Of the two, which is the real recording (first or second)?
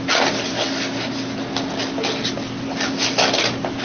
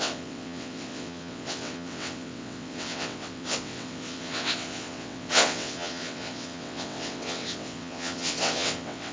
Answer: first